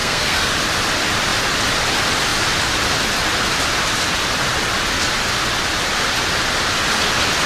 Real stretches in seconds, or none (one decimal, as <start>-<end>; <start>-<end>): 0.5-7.5